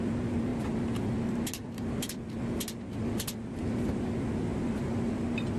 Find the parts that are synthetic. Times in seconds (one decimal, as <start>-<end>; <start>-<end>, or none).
4.5-5.1